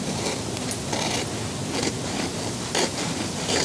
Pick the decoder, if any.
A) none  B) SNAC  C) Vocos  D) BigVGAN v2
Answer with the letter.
A